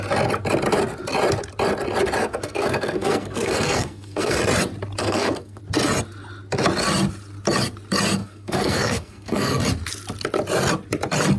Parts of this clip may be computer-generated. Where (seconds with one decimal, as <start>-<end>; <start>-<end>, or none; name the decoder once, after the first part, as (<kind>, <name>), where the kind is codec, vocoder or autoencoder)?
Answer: 2.2-4.4 (codec, SNAC); 5.0-5.6; 8.2-9.6